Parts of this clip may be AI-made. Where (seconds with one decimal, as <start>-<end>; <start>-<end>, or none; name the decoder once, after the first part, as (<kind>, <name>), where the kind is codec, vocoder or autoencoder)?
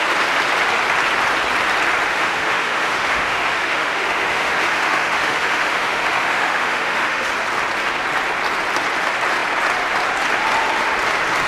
2.1-7.3 (autoencoder, DAC-VAE)